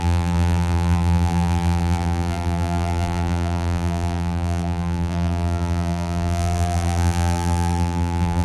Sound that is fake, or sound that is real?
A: fake